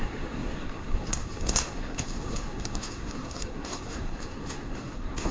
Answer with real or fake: fake